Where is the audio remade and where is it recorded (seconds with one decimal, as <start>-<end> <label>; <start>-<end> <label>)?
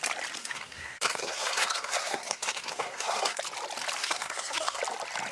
0.0-0.4 recorded; 0.4-3.4 remade; 3.4-4.0 recorded; 4.0-4.8 remade; 4.8-5.3 recorded